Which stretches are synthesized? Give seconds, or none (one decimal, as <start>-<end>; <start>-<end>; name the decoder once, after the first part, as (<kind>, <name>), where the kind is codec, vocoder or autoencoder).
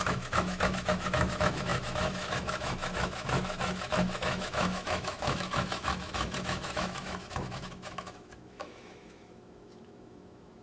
0.0-10.6 (autoencoder, DAC-VAE)